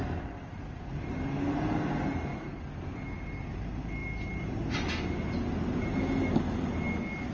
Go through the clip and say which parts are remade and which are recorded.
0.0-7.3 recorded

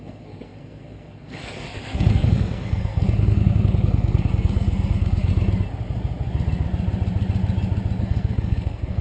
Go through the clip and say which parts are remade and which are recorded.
0.0-5.3 remade; 5.3-8.0 recorded; 8.0-9.0 remade

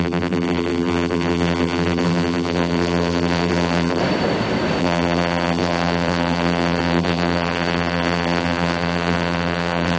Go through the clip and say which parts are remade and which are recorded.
0.0-4.0 remade; 4.0-4.8 recorded; 4.8-10.0 remade

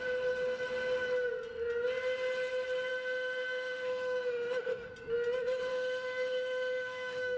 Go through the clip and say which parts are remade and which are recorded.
0.0-2.9 recorded; 2.9-4.9 remade; 4.9-5.7 recorded; 5.7-7.4 remade

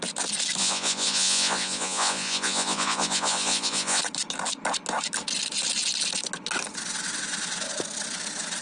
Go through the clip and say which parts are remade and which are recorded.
0.0-0.6 recorded; 0.6-4.0 remade; 4.0-8.6 recorded